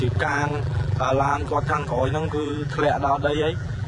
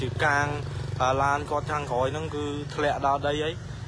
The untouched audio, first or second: second